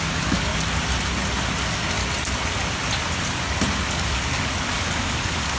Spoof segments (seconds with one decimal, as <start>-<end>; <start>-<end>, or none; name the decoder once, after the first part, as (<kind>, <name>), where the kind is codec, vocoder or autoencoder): 0.0-0.5 (codec, DAC); 1.6-2.0; 3.9-5.6